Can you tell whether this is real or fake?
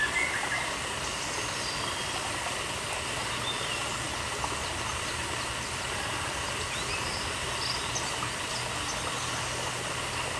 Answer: real